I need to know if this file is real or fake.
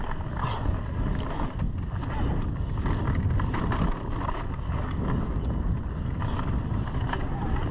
real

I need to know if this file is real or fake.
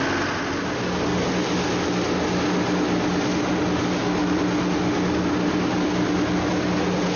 real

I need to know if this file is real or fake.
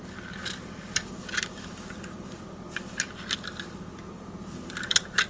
real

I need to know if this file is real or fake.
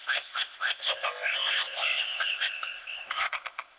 fake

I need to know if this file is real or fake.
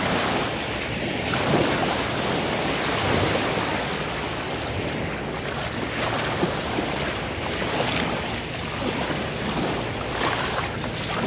real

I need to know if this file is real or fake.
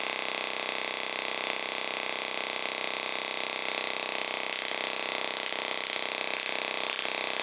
fake